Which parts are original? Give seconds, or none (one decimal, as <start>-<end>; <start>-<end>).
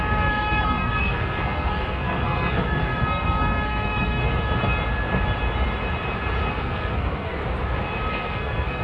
4.2-6.5; 7.4-8.1